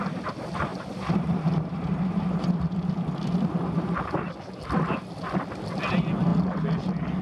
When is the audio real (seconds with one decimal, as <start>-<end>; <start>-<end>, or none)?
0.0-0.7; 2.9-7.2

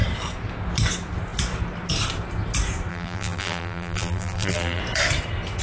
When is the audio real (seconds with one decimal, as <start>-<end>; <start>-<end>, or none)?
0.0-2.9; 4.8-5.6

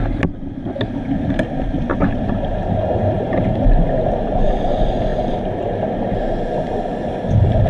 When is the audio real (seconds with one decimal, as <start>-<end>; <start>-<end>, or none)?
0.0-1.9; 4.5-5.1; 7.1-7.7

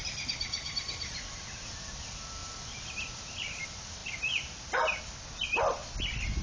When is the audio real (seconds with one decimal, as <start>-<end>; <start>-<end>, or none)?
1.6-6.4

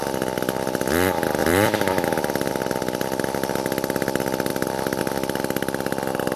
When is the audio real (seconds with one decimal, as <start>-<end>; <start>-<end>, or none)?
0.0-1.4; 2.5-6.4